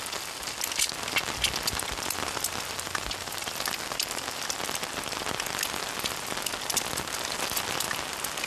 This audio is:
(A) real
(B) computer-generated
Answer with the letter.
A